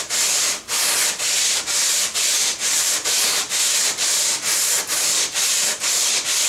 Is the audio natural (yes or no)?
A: yes